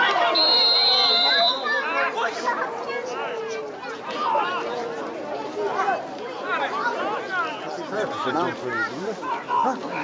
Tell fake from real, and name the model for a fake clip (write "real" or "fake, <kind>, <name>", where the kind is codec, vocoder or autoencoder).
real